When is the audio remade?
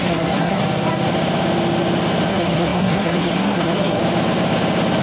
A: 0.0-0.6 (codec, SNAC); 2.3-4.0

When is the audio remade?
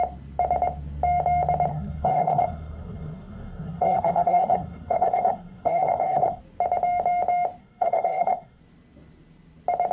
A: 1.7-6.4 (codec, SNAC); 7.6-8.6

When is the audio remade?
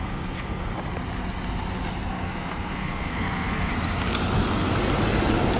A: 0.0-0.7 (codec, SNAC); 2.1-3.7